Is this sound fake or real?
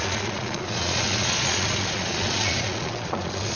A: fake